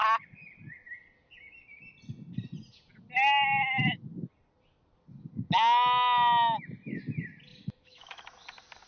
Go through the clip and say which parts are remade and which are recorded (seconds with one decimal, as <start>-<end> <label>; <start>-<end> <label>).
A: 0.0-7.5 recorded; 7.5-8.2 remade; 8.2-8.9 recorded